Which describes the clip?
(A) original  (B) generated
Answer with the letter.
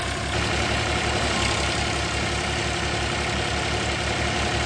A